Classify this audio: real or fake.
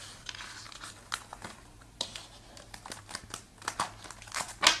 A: real